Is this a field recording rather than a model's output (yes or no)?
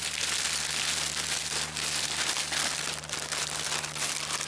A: yes